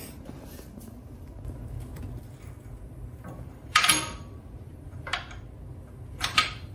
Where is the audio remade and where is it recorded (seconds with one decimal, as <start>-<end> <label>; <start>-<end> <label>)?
0.0-1.9 remade; 1.9-3.4 recorded; 3.4-5.1 remade; 5.1-6.1 recorded; 6.1-6.7 remade